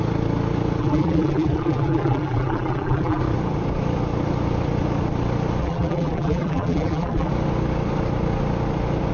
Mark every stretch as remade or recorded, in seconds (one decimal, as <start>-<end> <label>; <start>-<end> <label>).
0.0-0.8 recorded; 0.8-3.2 remade; 3.2-5.6 recorded; 5.6-7.3 remade; 7.3-9.1 recorded